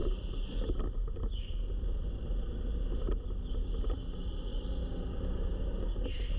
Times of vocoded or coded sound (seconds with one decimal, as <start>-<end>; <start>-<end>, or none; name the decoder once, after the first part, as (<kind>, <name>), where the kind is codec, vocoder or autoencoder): none